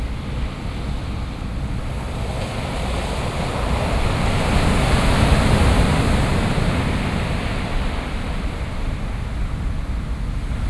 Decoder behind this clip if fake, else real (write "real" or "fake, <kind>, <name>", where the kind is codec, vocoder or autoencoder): real